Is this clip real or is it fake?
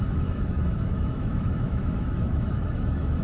fake